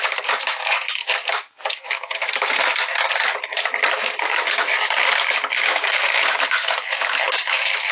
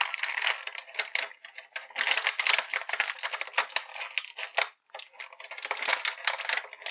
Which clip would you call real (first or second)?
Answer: second